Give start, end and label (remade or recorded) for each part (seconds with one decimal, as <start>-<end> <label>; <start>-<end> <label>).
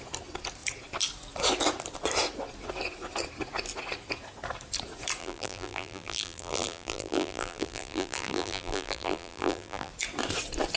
0.0-5.2 recorded; 5.2-9.9 remade; 9.9-10.8 recorded